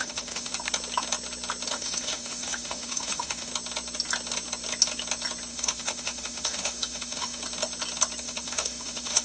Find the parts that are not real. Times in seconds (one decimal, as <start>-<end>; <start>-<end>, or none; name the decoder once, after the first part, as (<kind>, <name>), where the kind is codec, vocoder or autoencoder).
0.0-0.5 (autoencoder, DAC-VAE); 1.7-3.5; 5.5-7.4; 8.2-9.2